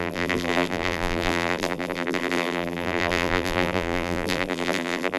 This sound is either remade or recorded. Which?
remade